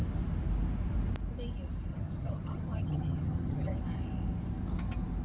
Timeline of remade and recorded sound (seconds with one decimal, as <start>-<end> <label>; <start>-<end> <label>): 0.0-1.9 recorded; 1.9-3.7 remade; 3.7-5.2 recorded